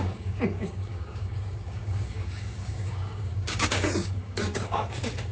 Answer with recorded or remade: remade